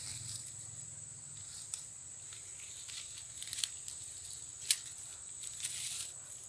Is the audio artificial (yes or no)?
no